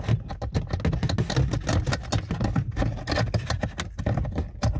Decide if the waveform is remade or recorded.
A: recorded